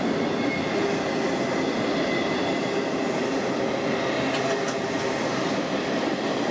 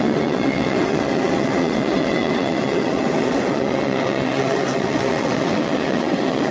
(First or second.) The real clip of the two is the first